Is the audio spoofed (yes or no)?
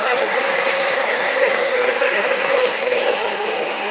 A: yes